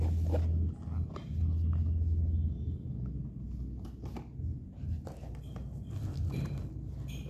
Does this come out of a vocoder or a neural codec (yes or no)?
no